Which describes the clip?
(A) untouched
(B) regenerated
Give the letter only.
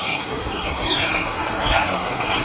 B